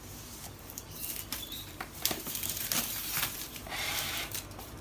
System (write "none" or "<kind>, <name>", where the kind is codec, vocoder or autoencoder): vocoder, BigVGAN v2